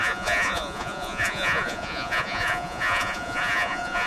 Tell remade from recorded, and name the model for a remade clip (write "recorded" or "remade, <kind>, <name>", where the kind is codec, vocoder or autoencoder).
remade, vocoder, Vocos